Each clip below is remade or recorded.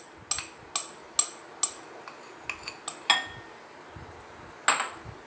recorded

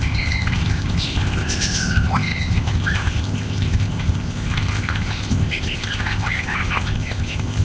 remade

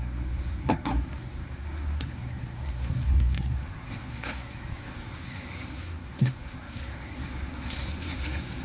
remade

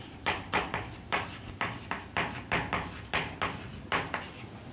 recorded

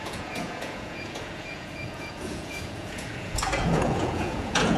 remade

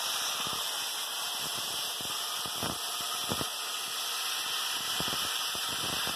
recorded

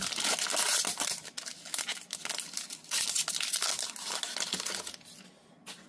recorded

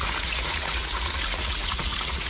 remade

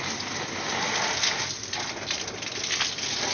recorded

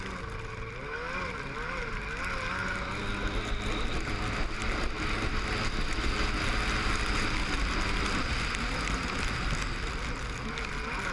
recorded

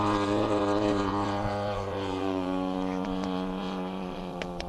remade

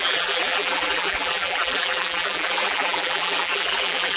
remade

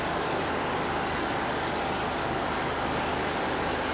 remade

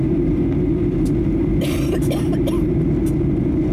recorded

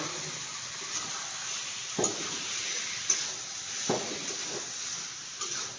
recorded